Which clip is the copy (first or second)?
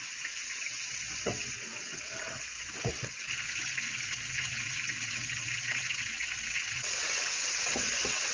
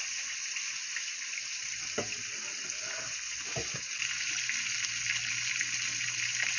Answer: first